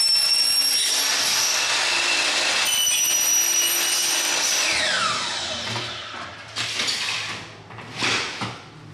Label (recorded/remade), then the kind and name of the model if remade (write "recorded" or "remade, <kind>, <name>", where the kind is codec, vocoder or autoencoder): recorded